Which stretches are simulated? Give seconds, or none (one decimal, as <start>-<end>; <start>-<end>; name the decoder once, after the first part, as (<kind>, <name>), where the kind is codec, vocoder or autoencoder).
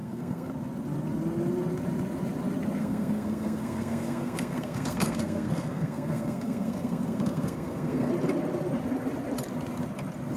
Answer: 0.0-0.5 (codec, SNAC); 2.8-8.1